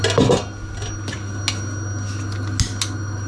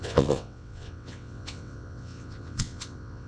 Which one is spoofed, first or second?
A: second